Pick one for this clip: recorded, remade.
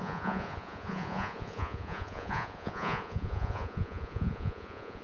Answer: remade